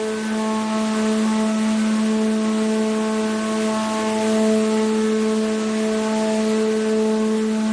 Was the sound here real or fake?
real